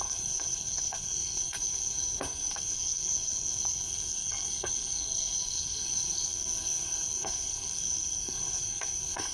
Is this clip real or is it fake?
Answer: fake